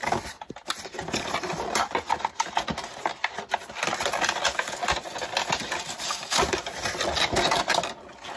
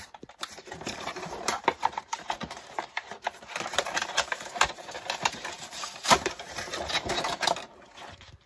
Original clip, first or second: first